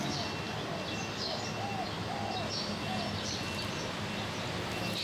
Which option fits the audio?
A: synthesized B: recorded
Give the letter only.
B